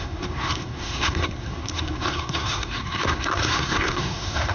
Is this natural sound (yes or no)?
no